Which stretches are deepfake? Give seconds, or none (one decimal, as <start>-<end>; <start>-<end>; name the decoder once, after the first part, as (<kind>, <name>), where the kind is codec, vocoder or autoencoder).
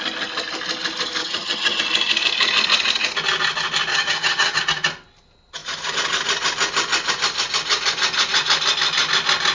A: 1.2-1.8 (vocoder, HiFi-GAN); 3.9-4.6